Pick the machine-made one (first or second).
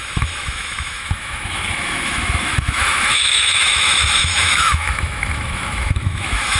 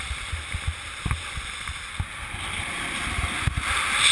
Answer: first